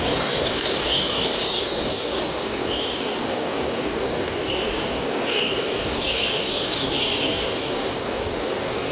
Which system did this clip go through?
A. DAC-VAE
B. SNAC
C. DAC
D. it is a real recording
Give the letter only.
C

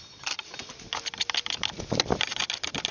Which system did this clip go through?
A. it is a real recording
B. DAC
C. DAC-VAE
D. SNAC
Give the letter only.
A